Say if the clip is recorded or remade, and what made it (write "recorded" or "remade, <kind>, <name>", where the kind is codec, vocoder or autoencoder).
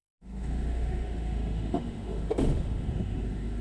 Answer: remade, autoencoder, DAC-VAE